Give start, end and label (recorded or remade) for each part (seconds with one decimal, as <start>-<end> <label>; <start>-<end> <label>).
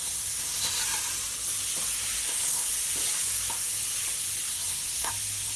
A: 0.0-0.8 remade; 0.8-2.2 recorded; 2.2-2.7 remade; 2.7-4.5 recorded; 4.5-5.1 remade; 5.1-5.6 recorded